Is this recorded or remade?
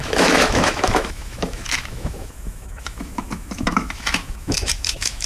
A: remade